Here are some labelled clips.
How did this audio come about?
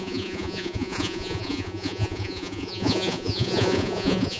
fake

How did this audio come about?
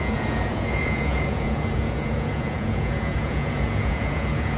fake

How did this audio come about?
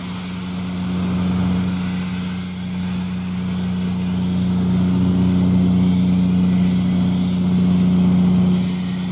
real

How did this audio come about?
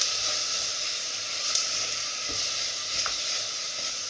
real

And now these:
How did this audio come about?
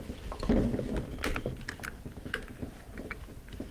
real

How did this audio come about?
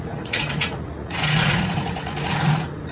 fake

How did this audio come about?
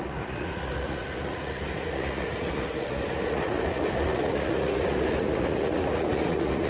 fake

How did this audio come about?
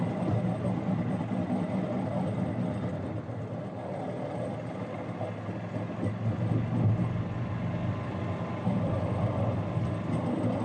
real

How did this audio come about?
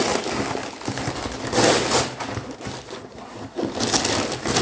real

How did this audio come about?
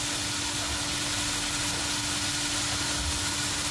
real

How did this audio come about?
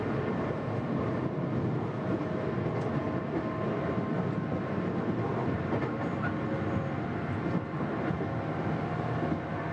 real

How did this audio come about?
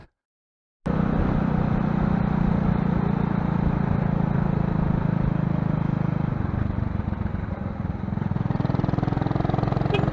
real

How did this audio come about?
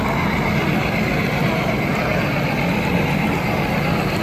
real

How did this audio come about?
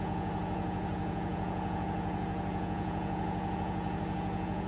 fake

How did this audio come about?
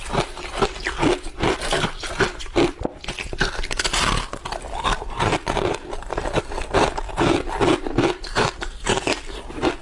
real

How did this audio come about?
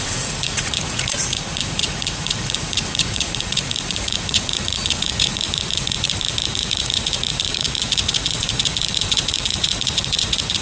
fake